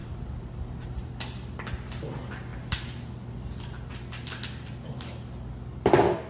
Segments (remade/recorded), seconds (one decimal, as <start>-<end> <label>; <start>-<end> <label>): 0.0-6.3 recorded

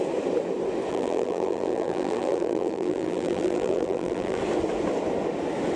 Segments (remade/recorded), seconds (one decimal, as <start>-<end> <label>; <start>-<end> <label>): 0.0-0.9 recorded; 0.9-4.4 remade; 4.4-5.8 recorded